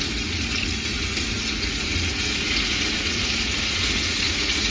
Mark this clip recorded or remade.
remade